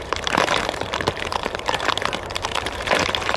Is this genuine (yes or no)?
no